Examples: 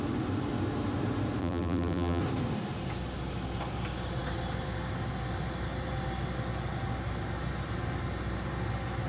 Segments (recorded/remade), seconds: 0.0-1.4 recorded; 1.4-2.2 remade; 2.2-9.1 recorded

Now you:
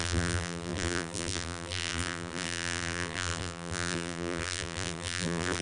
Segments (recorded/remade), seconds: 0.0-5.6 remade

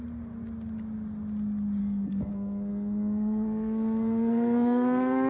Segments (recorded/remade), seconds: 0.0-1.8 recorded; 1.8-5.3 remade

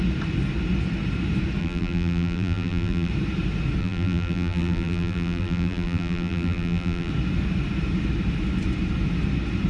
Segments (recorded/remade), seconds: 0.0-1.6 recorded; 1.6-3.1 remade; 3.1-3.8 recorded; 3.8-7.1 remade; 7.1-9.7 recorded

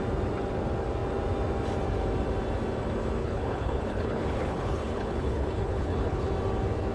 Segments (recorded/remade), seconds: 0.0-3.2 recorded; 3.2-6.3 remade; 6.3-6.9 recorded

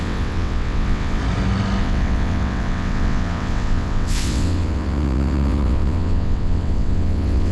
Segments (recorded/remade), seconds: 0.0-1.2 remade; 1.2-1.8 recorded; 1.8-7.5 remade

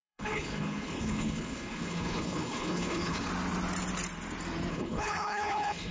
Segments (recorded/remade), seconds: 0.0-3.3 remade; 3.3-4.7 recorded; 4.7-5.9 remade